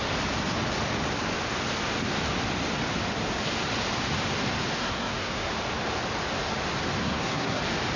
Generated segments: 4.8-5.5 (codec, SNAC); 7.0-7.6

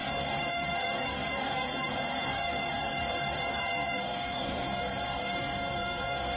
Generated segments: 0.0-6.4 (codec, DAC)

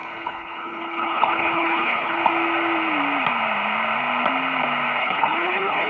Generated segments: 0.0-2.2 (codec, HILCodec); 5.0-5.9

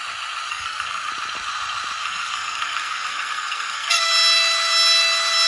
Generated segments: 0.5-1.1 (codec, SNAC); 2.0-4.1

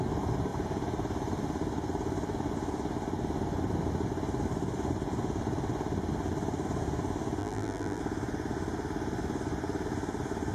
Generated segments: 7.4-8.0 (vocoder, BigVGAN v2)

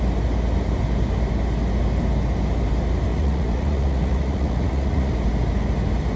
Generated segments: 3.1-5.1 (vocoder, Vocos)

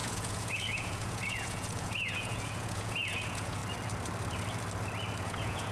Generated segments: 0.0-3.6 (vocoder, Vocos); 5.2-5.7

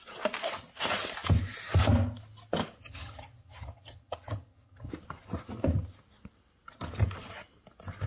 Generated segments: 2.8-4.9 (vocoder, HiFi-GAN)